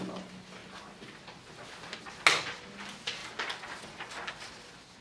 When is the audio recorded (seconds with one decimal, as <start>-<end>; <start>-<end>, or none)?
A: 0.0-5.0